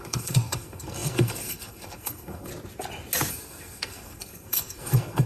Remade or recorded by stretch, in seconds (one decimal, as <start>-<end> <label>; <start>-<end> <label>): 0.0-2.5 remade; 2.5-3.3 recorded; 3.3-5.3 remade